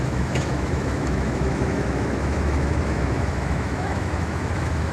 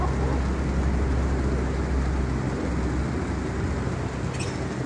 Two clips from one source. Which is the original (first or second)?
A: second